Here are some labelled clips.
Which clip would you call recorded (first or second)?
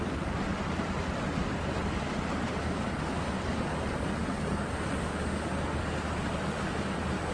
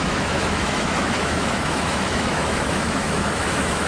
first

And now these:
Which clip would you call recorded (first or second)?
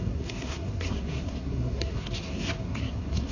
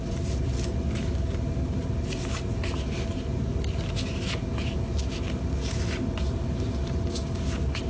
second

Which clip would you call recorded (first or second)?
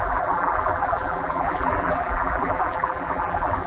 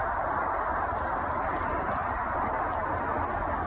second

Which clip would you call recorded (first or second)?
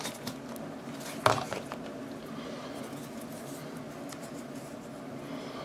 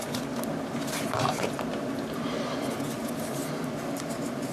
first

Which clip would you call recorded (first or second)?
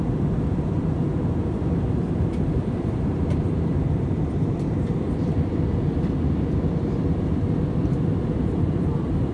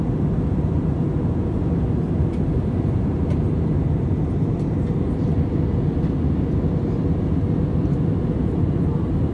second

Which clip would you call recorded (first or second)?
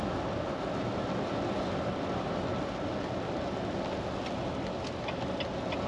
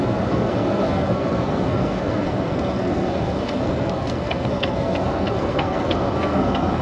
first